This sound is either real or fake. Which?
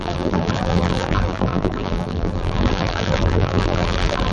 fake